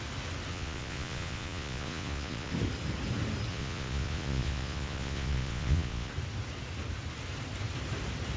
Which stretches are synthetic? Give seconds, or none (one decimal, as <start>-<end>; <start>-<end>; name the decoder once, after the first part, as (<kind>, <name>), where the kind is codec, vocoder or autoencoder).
0.5-2.5 (vocoder, Vocos); 3.5-6.1